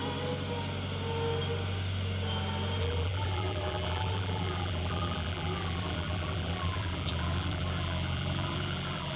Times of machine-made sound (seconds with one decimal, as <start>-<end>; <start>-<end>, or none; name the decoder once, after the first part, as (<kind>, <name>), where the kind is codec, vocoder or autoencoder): 2.8-9.2 (vocoder, BigVGAN v2)